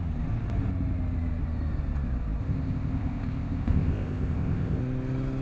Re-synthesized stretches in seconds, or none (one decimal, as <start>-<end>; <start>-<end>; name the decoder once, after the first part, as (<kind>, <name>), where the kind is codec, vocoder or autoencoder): 2.4-4.8 (codec, ZipCodec)